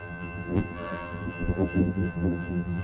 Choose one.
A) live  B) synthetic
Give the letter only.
B